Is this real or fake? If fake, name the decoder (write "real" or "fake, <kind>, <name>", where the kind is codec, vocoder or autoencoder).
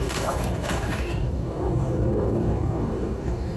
fake, codec, DAC